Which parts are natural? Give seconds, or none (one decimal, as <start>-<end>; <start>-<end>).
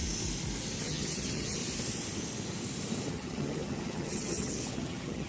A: 0.0-0.8; 1.6-3.1